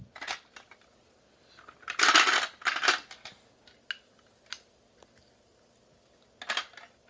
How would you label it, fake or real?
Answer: real